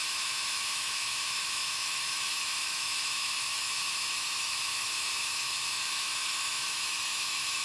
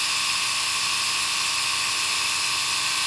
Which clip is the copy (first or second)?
first